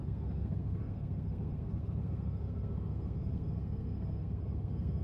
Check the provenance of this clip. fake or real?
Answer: fake